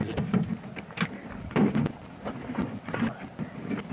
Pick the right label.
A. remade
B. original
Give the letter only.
B